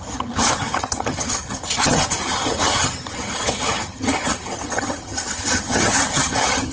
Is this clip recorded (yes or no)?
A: no